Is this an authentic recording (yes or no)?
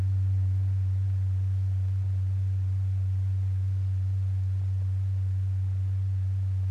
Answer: yes